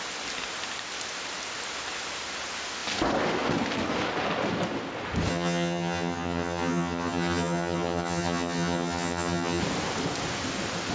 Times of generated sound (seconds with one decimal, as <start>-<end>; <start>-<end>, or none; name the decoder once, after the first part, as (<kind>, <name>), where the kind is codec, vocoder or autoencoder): 5.3-9.6 (vocoder, HiFi-GAN)